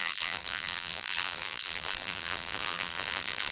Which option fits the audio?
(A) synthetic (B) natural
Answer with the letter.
A